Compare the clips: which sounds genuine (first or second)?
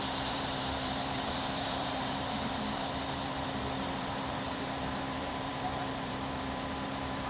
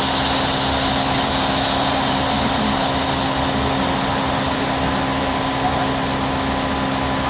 second